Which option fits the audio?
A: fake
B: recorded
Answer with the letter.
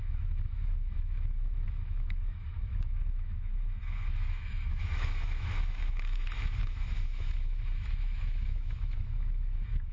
A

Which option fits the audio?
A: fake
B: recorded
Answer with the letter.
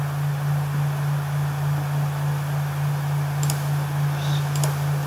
B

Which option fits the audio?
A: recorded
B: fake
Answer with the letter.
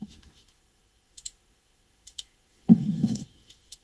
B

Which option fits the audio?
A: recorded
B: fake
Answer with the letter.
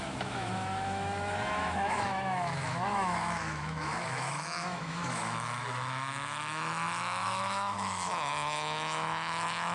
B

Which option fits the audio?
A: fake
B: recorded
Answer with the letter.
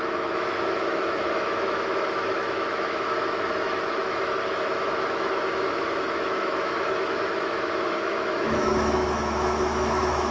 A